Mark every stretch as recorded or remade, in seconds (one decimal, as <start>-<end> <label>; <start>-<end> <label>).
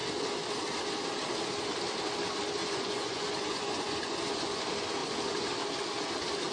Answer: 0.0-2.6 recorded; 2.6-4.6 remade; 4.6-6.5 recorded